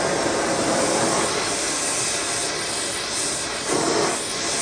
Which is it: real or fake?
real